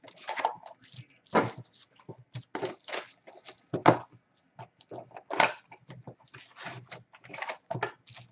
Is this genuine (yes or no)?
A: yes